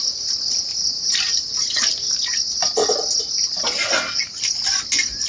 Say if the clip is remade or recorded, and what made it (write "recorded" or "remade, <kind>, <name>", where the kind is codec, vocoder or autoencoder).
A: recorded